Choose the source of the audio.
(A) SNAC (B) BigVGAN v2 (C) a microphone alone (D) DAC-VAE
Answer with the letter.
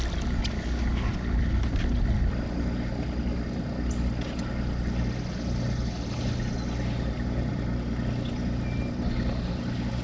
C